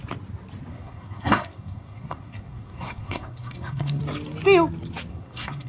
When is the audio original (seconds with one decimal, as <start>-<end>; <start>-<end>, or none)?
0.0-0.7; 4.0-5.1